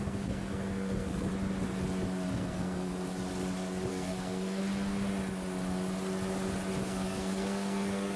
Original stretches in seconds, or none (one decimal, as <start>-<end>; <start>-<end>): 1.3-2.3; 2.9-3.9; 4.6-6.8